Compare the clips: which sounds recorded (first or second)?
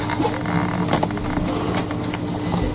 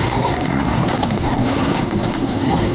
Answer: first